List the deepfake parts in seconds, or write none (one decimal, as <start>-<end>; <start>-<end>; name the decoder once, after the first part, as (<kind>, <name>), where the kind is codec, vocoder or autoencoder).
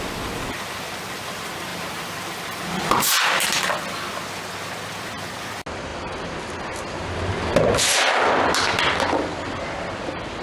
1.7-2.3 (vocoder, BigVGAN v2)